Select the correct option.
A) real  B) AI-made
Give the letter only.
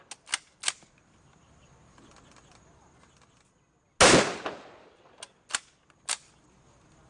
A